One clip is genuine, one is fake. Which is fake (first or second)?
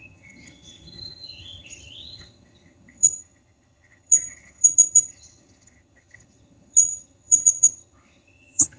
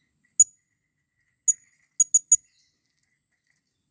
first